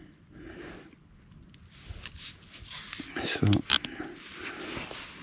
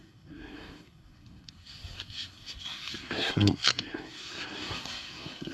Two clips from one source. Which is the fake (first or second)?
second